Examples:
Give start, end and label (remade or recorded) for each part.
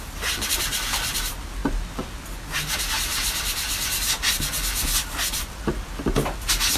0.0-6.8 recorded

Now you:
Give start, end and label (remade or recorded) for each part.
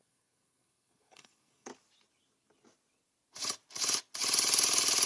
0.0-1.7 remade; 1.7-5.1 recorded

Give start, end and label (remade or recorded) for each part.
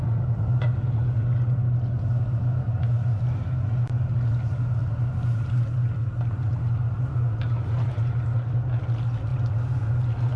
0.0-10.4 recorded